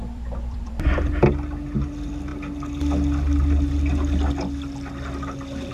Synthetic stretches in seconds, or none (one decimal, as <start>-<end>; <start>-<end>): 0.0-1.2; 1.9-2.3